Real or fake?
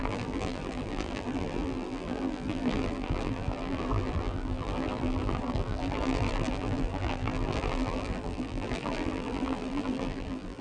fake